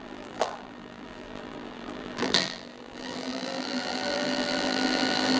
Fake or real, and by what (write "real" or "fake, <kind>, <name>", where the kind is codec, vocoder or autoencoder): fake, vocoder, BigVGAN v2